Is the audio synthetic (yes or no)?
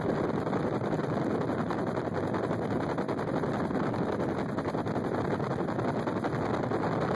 no